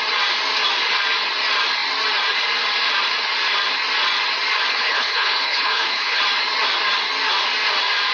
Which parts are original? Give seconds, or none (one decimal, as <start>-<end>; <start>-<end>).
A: 0.0-4.7; 6.2-8.1